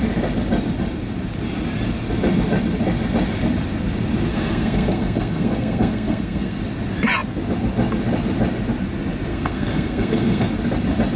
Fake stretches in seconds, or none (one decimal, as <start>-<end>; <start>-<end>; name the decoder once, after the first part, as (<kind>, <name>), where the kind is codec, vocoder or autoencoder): 4.3-6.6 (codec, SNAC); 9.3-10.5